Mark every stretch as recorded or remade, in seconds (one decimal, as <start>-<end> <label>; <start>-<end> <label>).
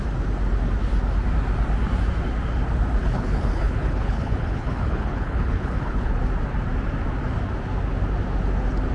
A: 0.0-3.0 recorded; 3.0-6.2 remade; 6.2-8.9 recorded